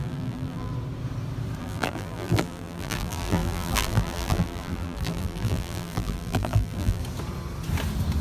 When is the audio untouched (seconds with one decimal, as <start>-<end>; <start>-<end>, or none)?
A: 0.7-1.6; 7.0-8.2